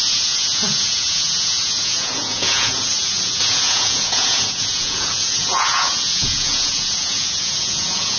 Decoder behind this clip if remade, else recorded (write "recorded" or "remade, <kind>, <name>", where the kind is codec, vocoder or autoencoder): remade, vocoder, Vocos